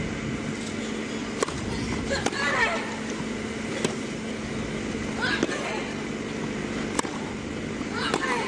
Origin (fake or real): real